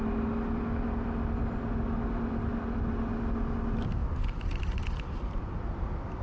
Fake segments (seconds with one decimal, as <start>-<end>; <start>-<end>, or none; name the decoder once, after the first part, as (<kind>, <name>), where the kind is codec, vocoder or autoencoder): none